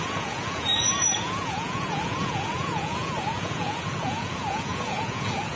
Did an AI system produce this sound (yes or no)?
yes